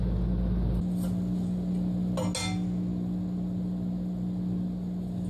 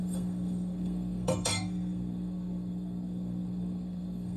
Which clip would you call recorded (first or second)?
first